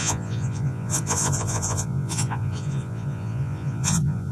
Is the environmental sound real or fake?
fake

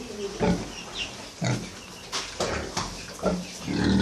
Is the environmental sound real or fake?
real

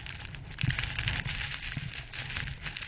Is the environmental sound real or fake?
real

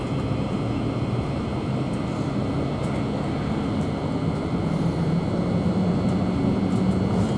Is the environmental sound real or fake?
real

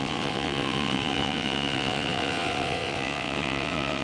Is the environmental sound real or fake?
fake